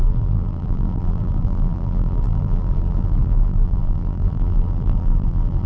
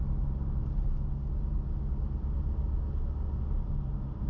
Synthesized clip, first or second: first